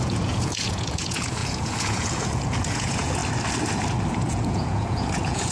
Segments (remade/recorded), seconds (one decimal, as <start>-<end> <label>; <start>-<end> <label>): 0.0-3.2 remade; 3.2-4.1 recorded; 4.1-5.5 remade

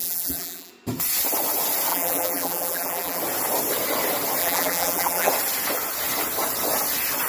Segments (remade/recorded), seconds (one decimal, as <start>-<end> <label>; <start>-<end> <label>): 0.0-0.7 remade; 0.7-1.9 recorded; 1.9-3.2 remade; 3.2-4.4 recorded; 4.4-5.3 remade; 5.3-7.3 recorded